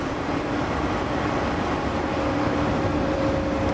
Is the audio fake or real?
real